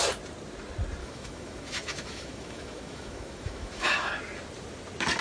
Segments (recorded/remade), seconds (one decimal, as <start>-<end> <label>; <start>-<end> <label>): 0.0-1.0 recorded; 1.0-4.1 remade; 4.1-5.2 recorded